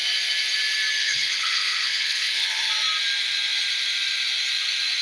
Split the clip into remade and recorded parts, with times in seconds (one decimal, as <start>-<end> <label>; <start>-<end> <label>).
0.0-1.0 recorded; 1.0-2.7 remade; 2.7-5.0 recorded